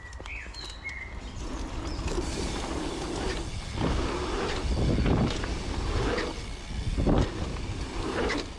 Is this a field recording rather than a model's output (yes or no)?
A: yes